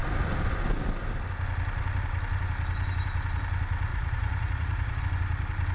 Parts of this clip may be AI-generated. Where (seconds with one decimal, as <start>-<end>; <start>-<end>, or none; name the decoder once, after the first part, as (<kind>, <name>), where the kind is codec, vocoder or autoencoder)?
3.9-5.0 (vocoder, Vocos)